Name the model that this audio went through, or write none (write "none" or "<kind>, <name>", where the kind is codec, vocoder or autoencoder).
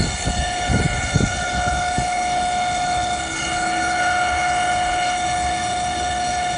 codec, HILCodec